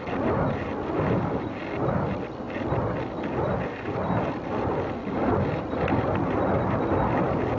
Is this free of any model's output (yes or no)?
yes